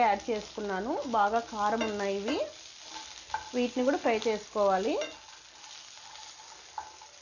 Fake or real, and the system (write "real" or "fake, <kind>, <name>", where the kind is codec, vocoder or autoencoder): real